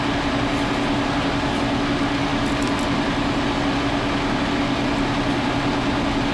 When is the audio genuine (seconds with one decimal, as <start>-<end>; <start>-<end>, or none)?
0.0-6.3